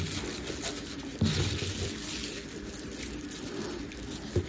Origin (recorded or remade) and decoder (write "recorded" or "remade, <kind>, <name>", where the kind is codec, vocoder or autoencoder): recorded